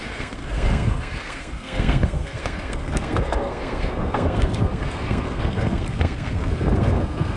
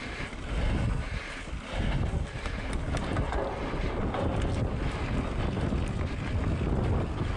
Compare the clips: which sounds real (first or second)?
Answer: second